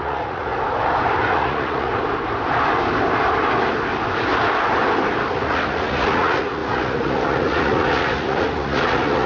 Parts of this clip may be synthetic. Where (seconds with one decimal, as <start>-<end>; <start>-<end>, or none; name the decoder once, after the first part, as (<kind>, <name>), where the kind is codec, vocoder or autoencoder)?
0.0-0.5 (vocoder, Vocos); 1.3-1.9; 5.3-9.3